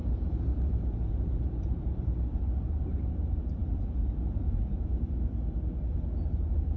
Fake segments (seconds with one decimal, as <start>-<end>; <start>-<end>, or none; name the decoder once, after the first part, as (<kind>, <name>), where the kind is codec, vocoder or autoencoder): 0.0-3.1 (vocoder, BigVGAN v2)